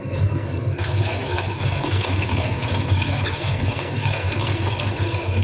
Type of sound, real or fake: fake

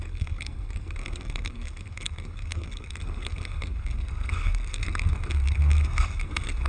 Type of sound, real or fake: fake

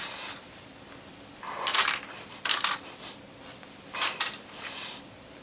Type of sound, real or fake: real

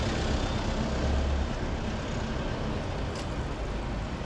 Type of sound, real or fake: real